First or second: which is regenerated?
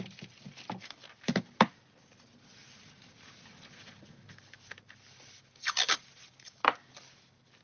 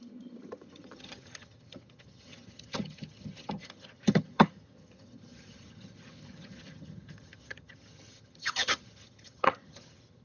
second